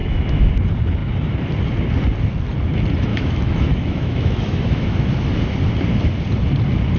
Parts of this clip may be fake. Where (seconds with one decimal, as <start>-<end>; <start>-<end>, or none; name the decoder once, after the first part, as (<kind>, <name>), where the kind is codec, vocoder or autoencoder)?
0.0-0.5 (autoencoder, DAC-VAE); 3.1-5.1